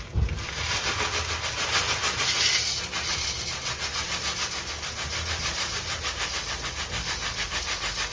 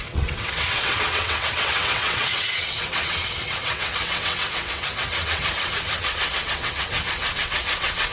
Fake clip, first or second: second